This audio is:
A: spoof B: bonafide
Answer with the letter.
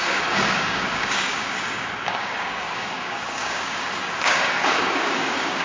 A